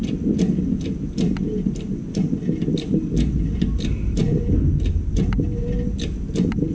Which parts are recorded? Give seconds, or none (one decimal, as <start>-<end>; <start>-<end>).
0.0-6.7